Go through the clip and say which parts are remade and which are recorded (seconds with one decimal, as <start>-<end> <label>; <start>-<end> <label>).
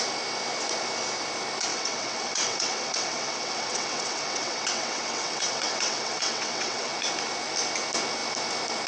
0.0-1.7 recorded; 1.7-6.9 remade; 6.9-8.9 recorded